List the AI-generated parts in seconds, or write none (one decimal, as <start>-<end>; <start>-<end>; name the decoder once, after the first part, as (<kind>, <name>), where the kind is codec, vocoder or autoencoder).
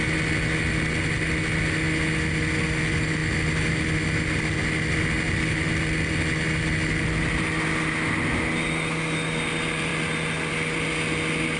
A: none